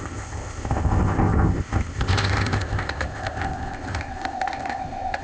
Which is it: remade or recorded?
remade